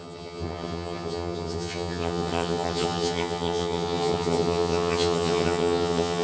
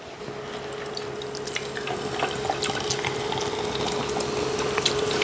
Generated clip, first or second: first